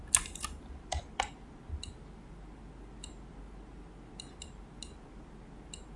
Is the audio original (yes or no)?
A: yes